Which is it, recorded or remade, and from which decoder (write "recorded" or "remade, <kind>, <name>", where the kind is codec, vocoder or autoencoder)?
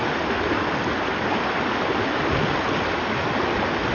recorded